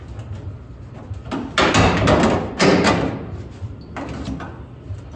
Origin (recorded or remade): recorded